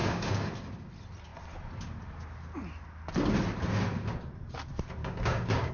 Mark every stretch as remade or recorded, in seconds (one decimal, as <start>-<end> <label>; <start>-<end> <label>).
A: 0.0-0.5 remade; 0.5-5.0 recorded; 5.0-5.7 remade